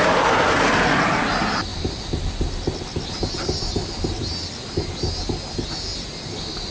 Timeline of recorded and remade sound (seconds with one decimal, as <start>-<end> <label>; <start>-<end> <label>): 0.0-6.7 recorded